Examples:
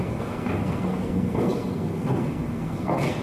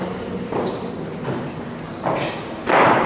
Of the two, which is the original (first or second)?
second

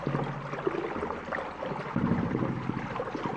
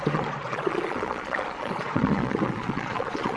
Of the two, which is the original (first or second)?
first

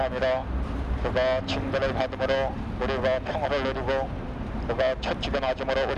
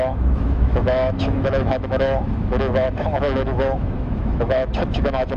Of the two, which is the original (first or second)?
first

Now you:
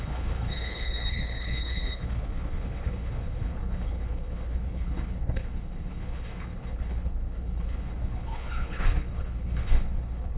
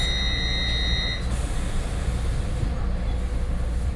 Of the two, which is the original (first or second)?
second